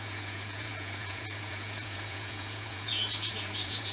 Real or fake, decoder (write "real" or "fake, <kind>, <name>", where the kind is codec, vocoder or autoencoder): fake, vocoder, Vocos